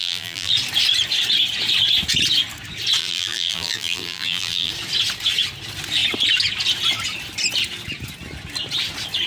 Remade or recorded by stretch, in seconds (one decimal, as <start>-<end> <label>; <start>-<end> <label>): 0.0-0.5 remade; 0.5-3.0 recorded; 3.0-4.7 remade; 4.7-9.3 recorded